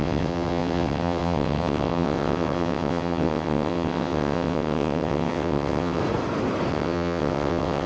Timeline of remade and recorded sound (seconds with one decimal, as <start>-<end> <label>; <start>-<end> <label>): 0.0-6.0 remade; 6.0-6.7 recorded; 6.7-7.9 remade

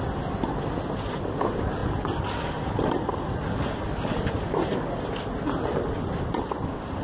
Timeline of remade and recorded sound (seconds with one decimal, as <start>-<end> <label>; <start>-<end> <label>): 0.0-7.0 recorded

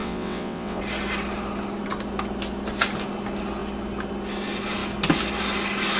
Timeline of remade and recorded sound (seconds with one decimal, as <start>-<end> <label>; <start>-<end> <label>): 0.0-0.8 remade; 0.8-6.0 recorded

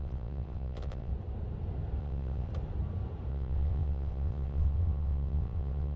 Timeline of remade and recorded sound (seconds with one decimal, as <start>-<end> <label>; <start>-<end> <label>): 0.0-1.1 remade; 1.1-2.0 recorded; 2.0-2.5 remade; 2.5-3.3 recorded; 3.3-6.0 remade

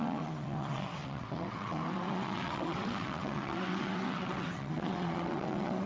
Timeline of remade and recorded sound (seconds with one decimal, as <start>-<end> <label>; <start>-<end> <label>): 0.0-5.9 remade

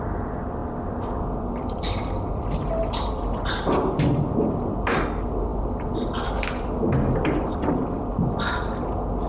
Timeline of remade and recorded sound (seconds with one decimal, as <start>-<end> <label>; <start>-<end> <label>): 0.0-9.3 recorded

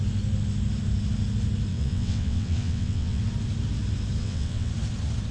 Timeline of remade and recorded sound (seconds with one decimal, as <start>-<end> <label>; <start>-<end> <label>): 0.0-1.7 recorded; 1.7-3.2 remade; 3.2-4.2 recorded; 4.2-4.7 remade; 4.7-5.3 recorded

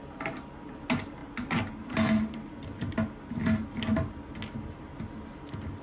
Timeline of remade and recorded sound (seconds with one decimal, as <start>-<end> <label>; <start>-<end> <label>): 0.0-5.8 recorded